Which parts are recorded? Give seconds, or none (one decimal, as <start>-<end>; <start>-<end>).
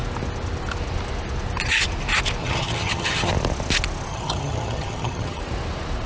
0.0-2.4; 3.3-4.1; 5.4-6.1